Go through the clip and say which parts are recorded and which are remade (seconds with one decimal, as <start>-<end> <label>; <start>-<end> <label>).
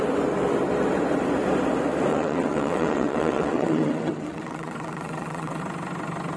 0.0-2.1 recorded; 2.1-5.6 remade; 5.6-6.4 recorded